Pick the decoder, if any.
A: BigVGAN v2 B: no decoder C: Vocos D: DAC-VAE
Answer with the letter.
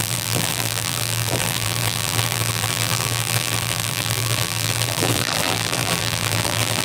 A